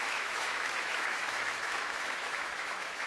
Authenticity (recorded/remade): remade